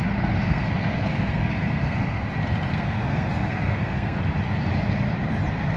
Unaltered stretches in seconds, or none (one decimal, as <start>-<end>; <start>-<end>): 0.0-0.5; 2.3-2.7; 4.2-5.8